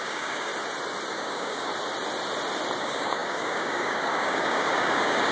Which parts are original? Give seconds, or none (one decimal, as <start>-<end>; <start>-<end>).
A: 0.5-1.1; 1.7-2.8